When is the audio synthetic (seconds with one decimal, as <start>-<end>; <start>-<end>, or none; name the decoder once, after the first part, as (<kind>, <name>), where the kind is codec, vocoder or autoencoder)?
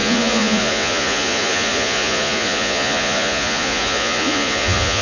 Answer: 0.0-5.0 (vocoder, Vocos)